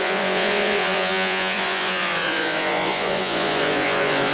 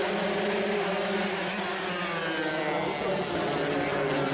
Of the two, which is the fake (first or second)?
first